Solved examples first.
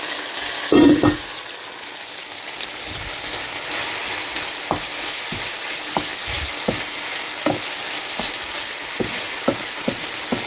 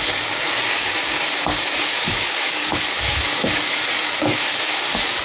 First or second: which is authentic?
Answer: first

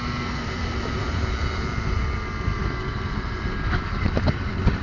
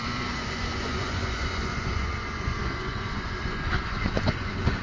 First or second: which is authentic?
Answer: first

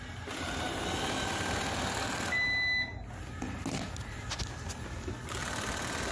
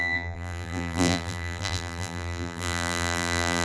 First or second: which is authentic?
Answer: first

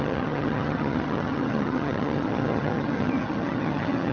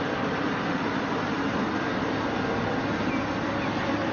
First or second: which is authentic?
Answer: second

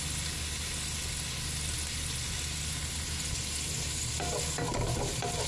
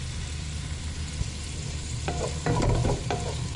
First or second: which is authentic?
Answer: first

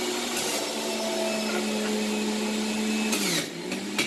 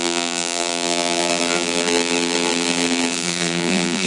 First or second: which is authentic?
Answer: first